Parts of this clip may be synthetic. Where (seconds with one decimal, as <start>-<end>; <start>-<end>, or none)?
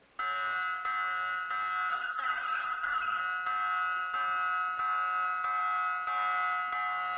1.9-3.2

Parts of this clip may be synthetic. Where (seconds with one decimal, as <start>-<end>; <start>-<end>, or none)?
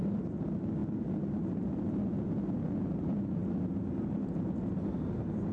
none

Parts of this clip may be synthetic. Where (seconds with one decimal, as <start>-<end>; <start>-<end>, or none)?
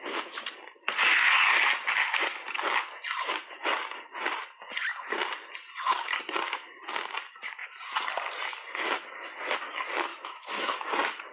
10.1-10.9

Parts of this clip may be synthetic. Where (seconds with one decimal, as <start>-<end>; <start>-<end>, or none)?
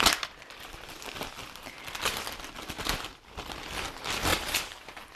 none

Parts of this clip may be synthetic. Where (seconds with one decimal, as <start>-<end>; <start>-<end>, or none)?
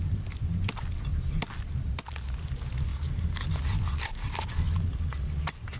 2.9-3.5